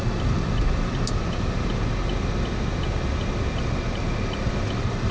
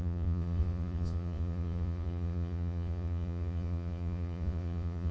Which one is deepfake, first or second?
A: second